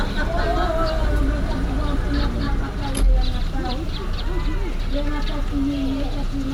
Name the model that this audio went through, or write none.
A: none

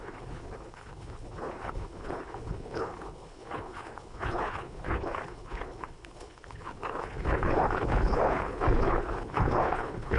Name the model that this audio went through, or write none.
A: codec, HILCodec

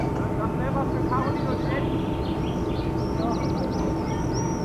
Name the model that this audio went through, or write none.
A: none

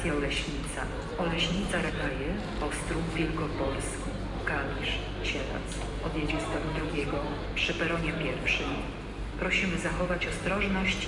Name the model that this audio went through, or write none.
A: none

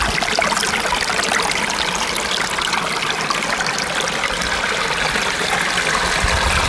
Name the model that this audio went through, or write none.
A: none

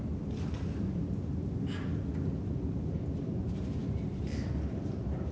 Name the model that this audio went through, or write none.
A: none